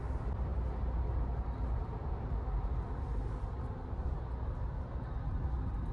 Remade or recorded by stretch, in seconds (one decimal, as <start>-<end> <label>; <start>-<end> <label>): 0.0-5.9 recorded